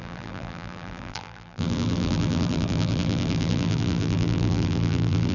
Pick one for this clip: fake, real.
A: fake